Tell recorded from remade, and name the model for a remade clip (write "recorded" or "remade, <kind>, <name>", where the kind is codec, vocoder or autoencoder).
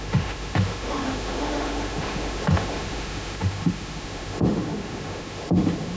remade, autoencoder, DAC-VAE